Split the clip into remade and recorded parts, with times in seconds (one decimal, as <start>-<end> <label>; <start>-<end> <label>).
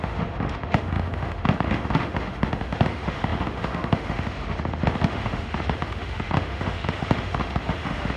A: 0.0-8.2 remade